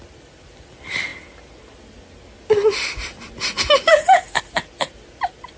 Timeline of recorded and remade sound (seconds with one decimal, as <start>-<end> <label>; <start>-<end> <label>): 0.0-1.1 remade; 1.1-4.4 recorded; 4.4-5.6 remade